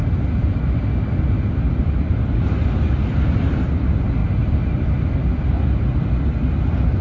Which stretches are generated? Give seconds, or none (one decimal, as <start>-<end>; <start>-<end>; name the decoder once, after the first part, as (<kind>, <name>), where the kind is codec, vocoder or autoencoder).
none